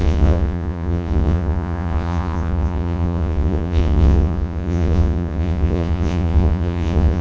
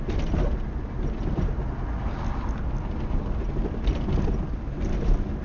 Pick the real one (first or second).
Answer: second